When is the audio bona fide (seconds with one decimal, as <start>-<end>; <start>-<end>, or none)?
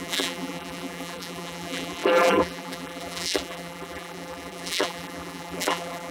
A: none